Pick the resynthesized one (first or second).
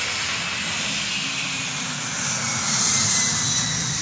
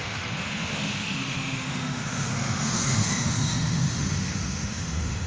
second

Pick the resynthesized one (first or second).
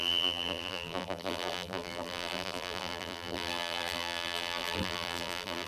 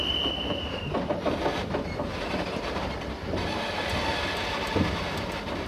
first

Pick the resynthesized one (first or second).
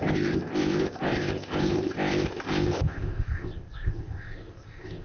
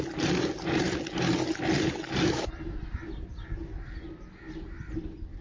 first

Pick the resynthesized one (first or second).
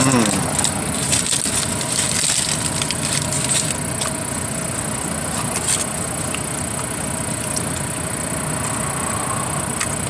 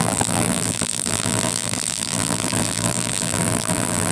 second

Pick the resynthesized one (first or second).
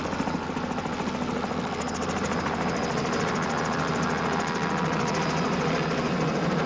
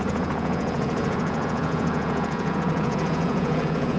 second